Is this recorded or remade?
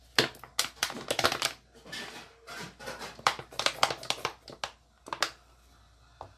recorded